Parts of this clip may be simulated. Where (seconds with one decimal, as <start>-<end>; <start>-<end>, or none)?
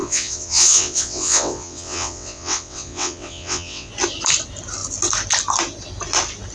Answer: 0.0-3.9